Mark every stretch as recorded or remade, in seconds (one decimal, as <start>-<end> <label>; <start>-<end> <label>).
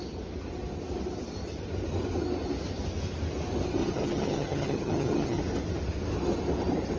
0.0-3.8 recorded; 3.8-5.4 remade; 5.4-7.0 recorded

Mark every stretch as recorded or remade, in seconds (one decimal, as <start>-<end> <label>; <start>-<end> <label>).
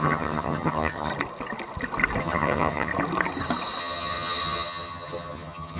0.0-1.1 remade; 1.1-2.2 recorded; 2.2-2.9 remade; 2.9-3.8 recorded; 3.8-5.8 remade